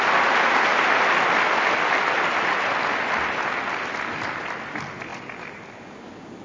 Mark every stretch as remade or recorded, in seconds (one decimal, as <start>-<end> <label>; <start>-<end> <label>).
0.0-6.4 recorded